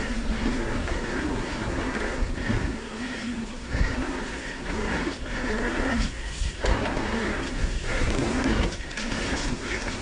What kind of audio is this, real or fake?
fake